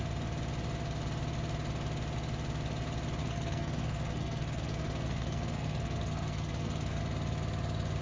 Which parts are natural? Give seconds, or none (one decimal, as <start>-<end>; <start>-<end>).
0.0-3.2; 7.0-8.0

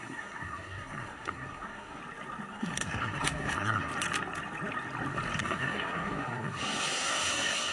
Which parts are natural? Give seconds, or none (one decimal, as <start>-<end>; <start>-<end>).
2.0-2.5; 3.9-5.4